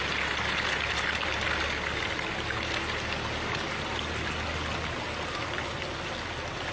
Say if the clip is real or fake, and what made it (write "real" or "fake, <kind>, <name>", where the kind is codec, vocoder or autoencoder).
real